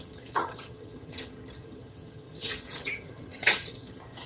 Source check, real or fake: fake